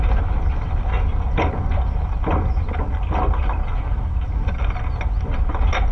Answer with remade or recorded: recorded